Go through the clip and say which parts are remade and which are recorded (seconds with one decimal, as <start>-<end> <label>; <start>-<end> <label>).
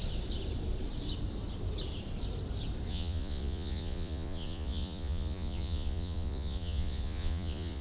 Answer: 0.0-2.9 recorded; 2.9-7.8 remade